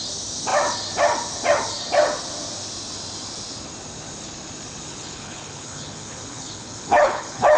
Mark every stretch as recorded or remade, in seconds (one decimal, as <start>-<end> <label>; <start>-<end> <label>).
0.0-4.9 recorded; 4.9-7.6 remade